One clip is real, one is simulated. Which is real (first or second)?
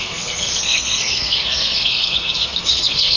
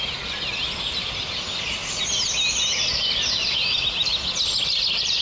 second